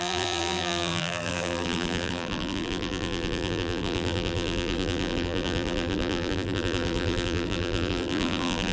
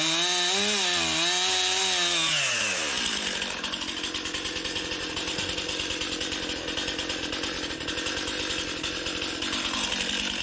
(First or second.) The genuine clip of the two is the second